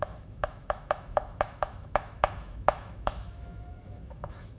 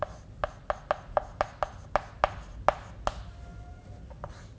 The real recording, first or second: second